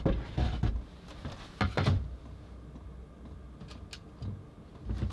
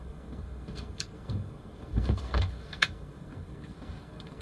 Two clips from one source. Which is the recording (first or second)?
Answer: first